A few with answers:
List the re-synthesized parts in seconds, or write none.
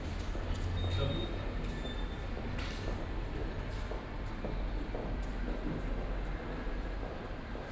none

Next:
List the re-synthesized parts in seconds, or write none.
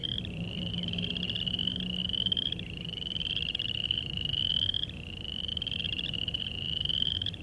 0.0-0.7 (vocoder, BigVGAN v2); 2.0-3.3; 5.5-6.4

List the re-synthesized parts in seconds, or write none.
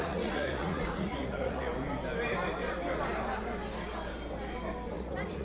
0.0-1.7 (vocoder, Vocos); 4.9-5.4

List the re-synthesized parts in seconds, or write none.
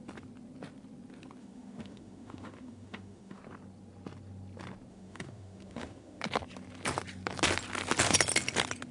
1.4-3.4 (autoencoder, DAC-VAE); 4.9-6.2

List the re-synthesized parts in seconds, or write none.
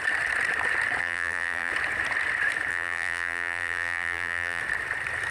1.0-1.7 (vocoder, BigVGAN v2); 2.7-4.6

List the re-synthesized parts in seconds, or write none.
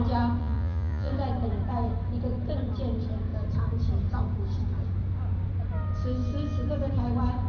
0.4-1.1 (vocoder, Vocos)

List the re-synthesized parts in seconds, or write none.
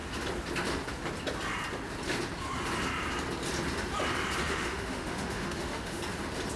4.4-6.0 (autoencoder, DAC-VAE)